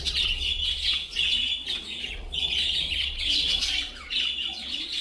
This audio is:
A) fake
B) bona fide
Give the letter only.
A